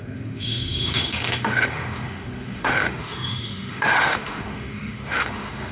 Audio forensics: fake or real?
fake